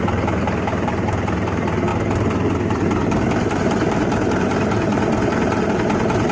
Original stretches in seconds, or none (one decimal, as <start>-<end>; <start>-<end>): none